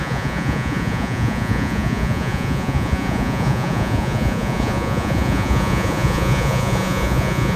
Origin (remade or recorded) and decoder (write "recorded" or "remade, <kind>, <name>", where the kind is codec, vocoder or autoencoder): remade, vocoder, Vocos